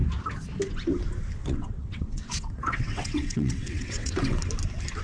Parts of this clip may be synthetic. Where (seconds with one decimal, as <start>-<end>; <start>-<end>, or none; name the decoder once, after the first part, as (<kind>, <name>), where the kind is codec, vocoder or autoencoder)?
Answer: 1.4-4.4 (vocoder, WaveNeXt)